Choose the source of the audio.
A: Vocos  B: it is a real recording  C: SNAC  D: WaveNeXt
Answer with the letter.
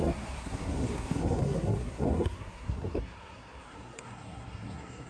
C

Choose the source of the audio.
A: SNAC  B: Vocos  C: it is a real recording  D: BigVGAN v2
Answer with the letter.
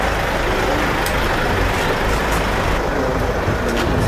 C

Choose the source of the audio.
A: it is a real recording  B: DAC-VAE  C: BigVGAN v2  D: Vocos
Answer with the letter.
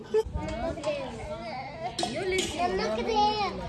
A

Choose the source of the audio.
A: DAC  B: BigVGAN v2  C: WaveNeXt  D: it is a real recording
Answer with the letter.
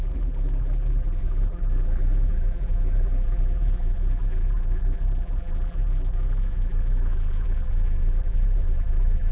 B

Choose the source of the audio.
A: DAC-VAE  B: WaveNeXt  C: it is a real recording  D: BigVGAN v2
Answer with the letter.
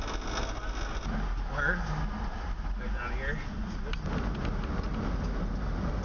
C